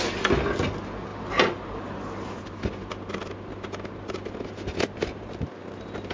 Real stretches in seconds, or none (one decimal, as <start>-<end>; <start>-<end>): 0.0-6.1